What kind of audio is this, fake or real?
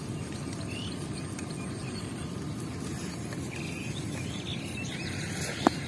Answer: real